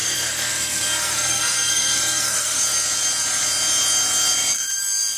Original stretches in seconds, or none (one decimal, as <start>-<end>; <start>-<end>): 2.6-5.2